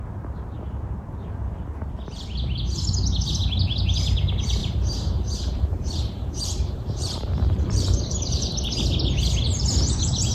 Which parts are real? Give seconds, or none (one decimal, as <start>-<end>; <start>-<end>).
0.0-4.6; 8.5-10.3